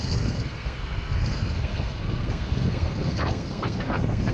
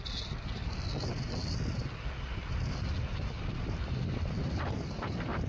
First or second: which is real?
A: second